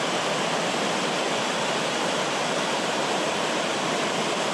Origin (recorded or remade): recorded